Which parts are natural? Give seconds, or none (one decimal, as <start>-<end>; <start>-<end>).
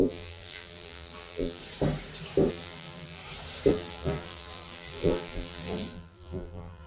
1.6-2.5; 3.2-3.7